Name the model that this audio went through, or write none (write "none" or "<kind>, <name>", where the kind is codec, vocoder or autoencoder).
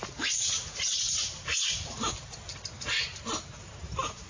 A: vocoder, BigVGAN v2